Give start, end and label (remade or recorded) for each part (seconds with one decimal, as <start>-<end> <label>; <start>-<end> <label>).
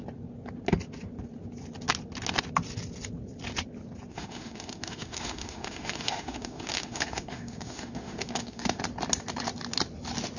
0.0-4.1 recorded; 4.1-8.8 remade; 8.8-10.4 recorded